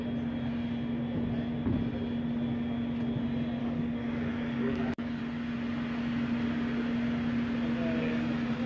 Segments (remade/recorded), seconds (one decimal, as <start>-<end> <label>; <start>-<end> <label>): 0.0-3.6 recorded; 3.6-5.2 remade; 5.2-8.7 recorded